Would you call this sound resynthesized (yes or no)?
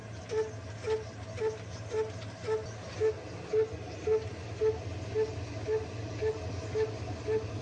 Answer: no